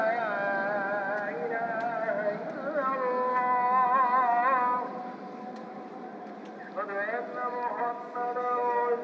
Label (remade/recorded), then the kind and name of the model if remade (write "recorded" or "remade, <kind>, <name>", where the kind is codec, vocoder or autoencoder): recorded